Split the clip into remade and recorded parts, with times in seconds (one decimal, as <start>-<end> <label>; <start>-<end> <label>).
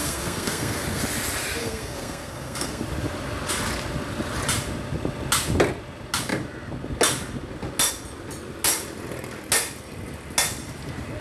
0.0-1.0 remade; 1.0-1.6 recorded; 1.6-2.8 remade; 2.8-11.2 recorded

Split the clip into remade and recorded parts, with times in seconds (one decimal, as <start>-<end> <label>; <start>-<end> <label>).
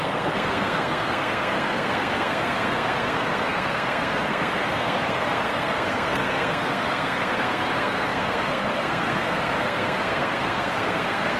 0.0-11.4 remade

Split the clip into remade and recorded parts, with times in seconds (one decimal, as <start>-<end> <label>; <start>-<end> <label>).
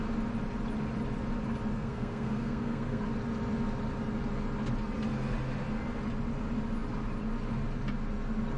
0.0-1.7 recorded; 1.7-3.0 remade; 3.0-8.6 recorded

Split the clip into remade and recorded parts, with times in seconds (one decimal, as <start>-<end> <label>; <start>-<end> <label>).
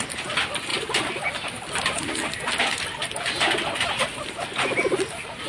0.0-5.5 recorded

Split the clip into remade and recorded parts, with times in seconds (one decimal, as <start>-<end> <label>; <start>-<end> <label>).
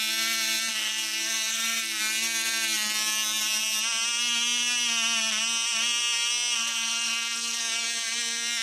0.0-0.7 recorded; 0.7-2.0 remade; 2.0-6.6 recorded; 6.6-7.6 remade; 7.6-8.6 recorded